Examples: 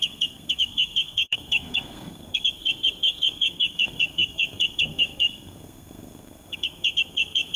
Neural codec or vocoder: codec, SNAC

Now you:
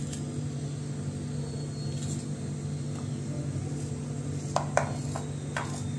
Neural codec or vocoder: none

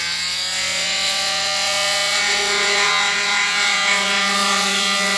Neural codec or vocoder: vocoder, WaveNeXt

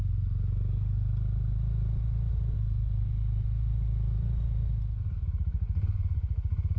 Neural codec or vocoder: none